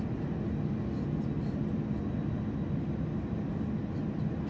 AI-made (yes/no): no